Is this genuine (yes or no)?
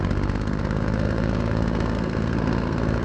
no